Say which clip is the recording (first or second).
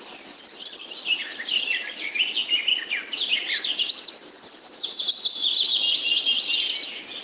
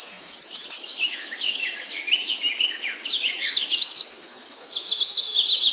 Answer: first